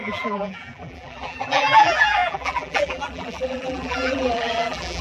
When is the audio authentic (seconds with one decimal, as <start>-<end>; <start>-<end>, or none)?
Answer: none